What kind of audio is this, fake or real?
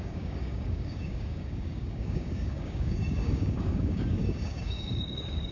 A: fake